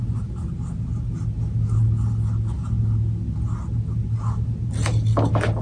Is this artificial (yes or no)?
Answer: no